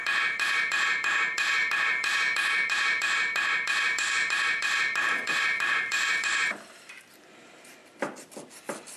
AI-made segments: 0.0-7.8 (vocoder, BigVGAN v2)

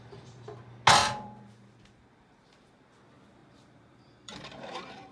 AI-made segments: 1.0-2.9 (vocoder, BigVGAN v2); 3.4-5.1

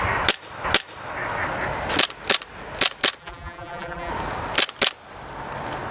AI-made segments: 3.2-4.1 (vocoder, BigVGAN v2)

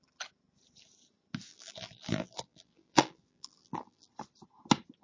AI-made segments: 1.5-4.1 (vocoder, BigVGAN v2)